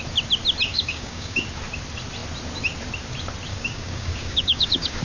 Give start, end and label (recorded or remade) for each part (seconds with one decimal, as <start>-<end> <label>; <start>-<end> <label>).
0.0-0.7 recorded; 0.7-1.4 remade; 1.4-3.5 recorded; 3.5-5.0 remade

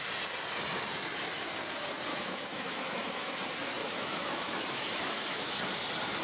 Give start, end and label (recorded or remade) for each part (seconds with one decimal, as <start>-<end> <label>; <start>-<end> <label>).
0.0-2.1 recorded; 2.1-3.3 remade; 3.3-3.8 recorded; 3.8-5.6 remade; 5.6-6.2 recorded

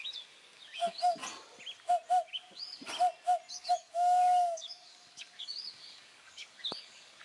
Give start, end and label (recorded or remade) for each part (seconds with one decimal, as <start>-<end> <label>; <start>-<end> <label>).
0.0-1.2 remade; 1.2-2.3 recorded; 2.3-2.8 remade; 2.8-3.5 recorded; 3.5-7.2 remade

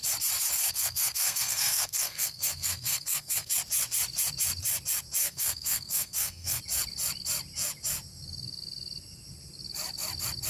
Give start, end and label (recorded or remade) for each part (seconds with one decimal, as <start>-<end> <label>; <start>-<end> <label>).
0.0-0.6 recorded; 0.6-3.5 remade; 3.5-5.2 recorded; 5.2-6.6 remade; 6.6-10.5 recorded

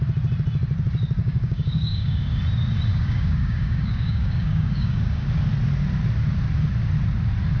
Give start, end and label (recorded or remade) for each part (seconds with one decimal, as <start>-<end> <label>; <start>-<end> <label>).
0.0-1.2 recorded; 1.2-2.4 remade; 2.4-2.9 recorded; 2.9-5.3 remade; 5.3-7.6 recorded

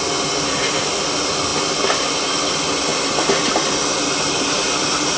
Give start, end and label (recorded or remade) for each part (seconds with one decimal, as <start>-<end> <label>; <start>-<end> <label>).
0.0-5.2 recorded